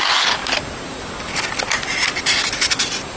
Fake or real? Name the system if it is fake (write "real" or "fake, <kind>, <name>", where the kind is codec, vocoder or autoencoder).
real